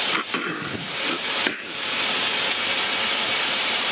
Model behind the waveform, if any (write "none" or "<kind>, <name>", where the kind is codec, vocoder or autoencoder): vocoder, BigVGAN v2